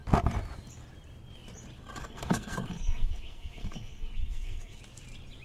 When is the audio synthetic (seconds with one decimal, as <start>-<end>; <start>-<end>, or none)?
2.0-4.8